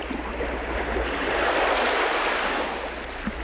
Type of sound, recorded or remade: recorded